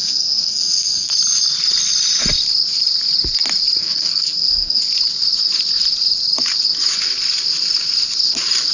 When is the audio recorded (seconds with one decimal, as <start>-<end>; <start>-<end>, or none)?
1.1-3.8; 4.8-8.7